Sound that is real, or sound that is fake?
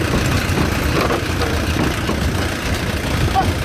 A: real